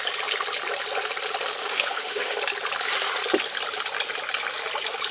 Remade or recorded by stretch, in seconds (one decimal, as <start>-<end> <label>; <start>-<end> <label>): 0.0-1.6 recorded; 1.6-2.4 remade; 2.4-5.1 recorded